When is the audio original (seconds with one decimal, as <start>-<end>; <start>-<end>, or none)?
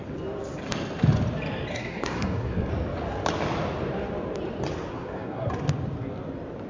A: 0.0-1.7; 2.7-4.9; 5.5-6.7